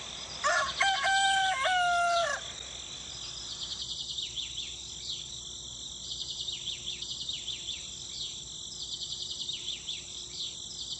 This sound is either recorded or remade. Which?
recorded